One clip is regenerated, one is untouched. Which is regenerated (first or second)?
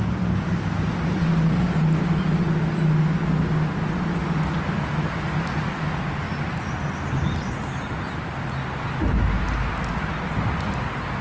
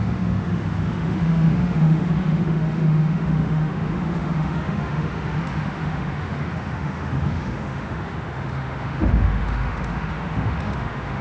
second